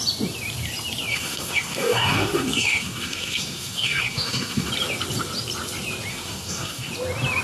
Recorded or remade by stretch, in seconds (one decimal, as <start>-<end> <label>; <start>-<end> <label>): 0.0-1.1 recorded; 1.1-4.7 remade; 4.7-6.1 recorded; 6.1-6.9 remade; 6.9-7.4 recorded